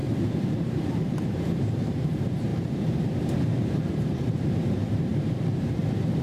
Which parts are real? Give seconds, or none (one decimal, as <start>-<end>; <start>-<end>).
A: none